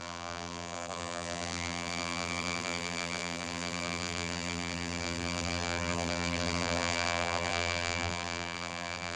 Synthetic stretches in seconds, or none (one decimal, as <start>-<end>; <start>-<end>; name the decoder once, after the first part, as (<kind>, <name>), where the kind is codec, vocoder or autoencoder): 0.0-9.2 (vocoder, BigVGAN v2)